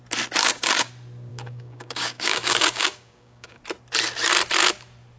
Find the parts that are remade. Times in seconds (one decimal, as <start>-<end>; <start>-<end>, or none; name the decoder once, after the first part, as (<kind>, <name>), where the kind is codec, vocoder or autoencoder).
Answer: 0.4-0.9 (codec, DAC); 1.3-3.6